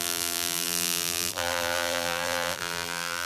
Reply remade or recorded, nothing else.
remade